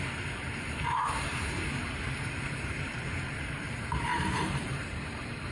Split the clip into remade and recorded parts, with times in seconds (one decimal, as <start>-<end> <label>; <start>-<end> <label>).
0.0-1.3 recorded; 1.3-3.3 remade; 3.3-4.1 recorded; 4.1-5.5 remade